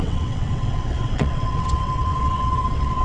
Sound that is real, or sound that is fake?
fake